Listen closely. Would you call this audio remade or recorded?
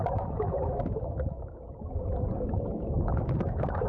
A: remade